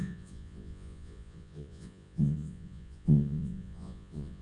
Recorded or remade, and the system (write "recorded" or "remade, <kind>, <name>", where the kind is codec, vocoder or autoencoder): remade, vocoder, Vocos